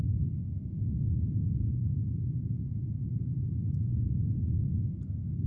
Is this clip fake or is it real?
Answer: fake